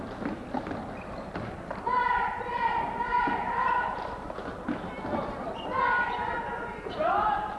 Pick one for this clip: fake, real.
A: real